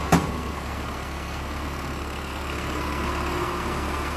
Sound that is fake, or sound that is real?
fake